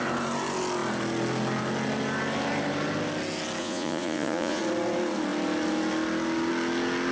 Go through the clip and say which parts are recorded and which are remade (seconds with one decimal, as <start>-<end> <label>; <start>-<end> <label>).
0.0-3.6 recorded; 3.6-4.6 remade; 4.6-7.1 recorded